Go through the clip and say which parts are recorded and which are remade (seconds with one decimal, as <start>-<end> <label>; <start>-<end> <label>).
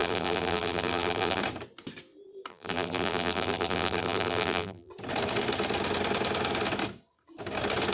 0.0-1.4 remade; 1.4-2.5 recorded; 2.5-4.9 remade; 4.9-7.9 recorded